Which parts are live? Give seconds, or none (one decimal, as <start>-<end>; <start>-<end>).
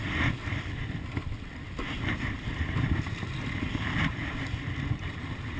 0.0-5.6